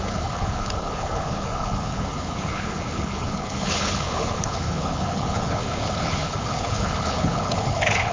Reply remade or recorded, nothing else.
remade